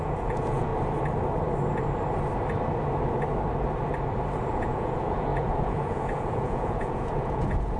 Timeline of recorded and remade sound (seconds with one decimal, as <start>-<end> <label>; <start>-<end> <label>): 0.0-0.7 remade; 0.7-4.5 recorded; 4.5-7.8 remade